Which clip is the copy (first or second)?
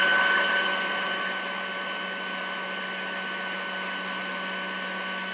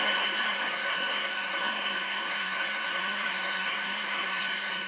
second